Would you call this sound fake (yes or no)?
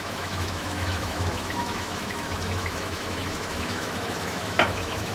yes